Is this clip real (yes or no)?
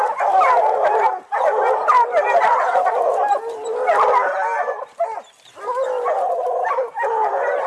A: yes